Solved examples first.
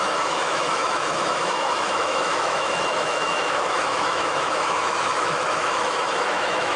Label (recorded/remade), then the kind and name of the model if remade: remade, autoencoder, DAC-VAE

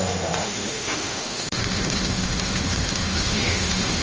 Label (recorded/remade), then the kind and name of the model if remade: remade, autoencoder, DAC-VAE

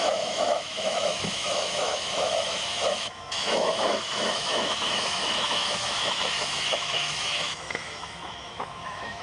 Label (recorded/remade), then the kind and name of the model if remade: remade, autoencoder, DAC-VAE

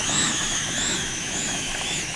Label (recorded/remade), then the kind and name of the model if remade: remade, autoencoder, DAC-VAE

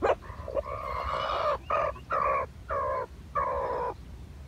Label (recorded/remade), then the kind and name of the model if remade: recorded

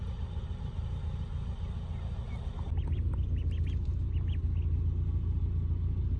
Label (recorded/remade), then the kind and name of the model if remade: recorded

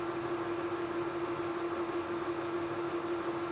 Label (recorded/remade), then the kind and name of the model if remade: recorded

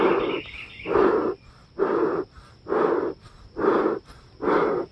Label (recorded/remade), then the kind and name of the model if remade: recorded